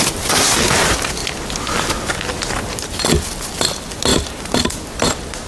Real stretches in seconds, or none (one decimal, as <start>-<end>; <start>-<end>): 0.0-5.5